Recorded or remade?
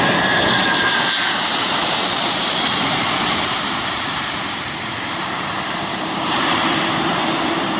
remade